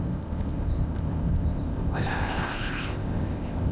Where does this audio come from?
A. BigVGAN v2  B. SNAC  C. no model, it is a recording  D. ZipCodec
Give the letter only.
D